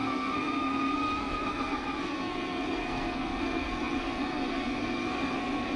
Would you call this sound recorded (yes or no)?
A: no